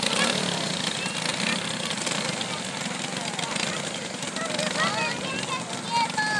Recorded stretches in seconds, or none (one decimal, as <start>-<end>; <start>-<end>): 0.0-6.4